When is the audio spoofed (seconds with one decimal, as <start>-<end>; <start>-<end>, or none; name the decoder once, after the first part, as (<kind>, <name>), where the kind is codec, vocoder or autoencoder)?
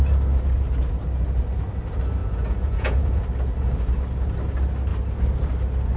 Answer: 2.2-3.2 (vocoder, Vocos)